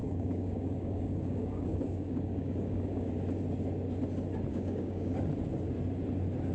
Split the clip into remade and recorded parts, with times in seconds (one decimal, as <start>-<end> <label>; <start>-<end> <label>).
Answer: 0.0-3.1 remade; 3.1-4.5 recorded; 4.5-5.3 remade; 5.3-6.5 recorded